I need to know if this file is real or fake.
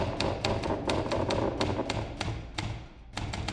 real